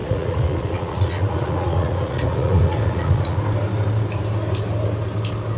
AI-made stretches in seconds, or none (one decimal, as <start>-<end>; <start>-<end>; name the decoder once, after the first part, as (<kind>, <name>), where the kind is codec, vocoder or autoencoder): 0.0-3.4 (vocoder, Vocos)